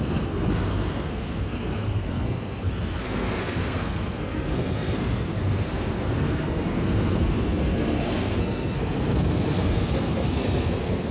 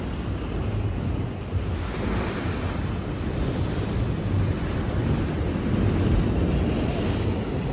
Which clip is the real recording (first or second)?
second